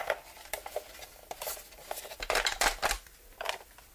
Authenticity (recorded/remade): recorded